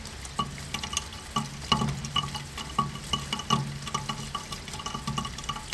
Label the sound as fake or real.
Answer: real